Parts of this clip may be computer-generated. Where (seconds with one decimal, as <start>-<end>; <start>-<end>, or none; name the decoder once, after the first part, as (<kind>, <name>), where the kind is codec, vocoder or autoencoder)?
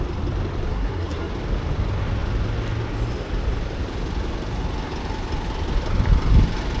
0.7-1.3 (codec, SNAC)